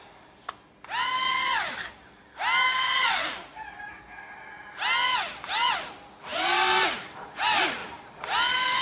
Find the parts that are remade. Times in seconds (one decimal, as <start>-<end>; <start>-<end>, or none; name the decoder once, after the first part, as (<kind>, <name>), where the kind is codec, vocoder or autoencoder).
none